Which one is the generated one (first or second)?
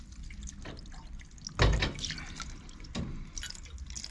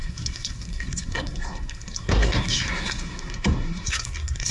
second